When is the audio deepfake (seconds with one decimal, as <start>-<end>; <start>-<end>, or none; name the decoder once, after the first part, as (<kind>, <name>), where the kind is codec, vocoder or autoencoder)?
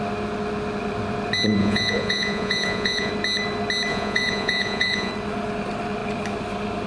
1.6-3.1 (vocoder, Vocos); 3.9-5.1